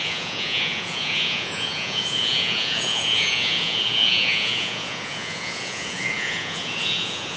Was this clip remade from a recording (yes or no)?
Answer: yes